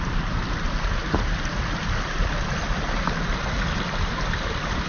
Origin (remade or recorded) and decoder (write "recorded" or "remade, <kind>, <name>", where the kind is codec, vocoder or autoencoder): recorded